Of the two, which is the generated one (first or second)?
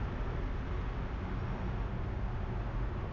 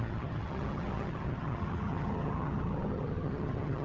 second